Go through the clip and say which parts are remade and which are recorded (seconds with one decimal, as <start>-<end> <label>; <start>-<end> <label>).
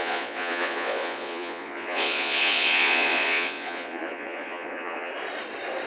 0.0-5.1 remade; 5.1-5.9 recorded